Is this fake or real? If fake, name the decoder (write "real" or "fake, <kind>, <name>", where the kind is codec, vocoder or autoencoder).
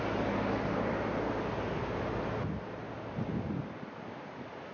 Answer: real